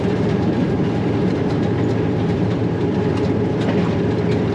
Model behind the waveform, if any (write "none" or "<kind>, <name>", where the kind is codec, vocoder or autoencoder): vocoder, BigVGAN v2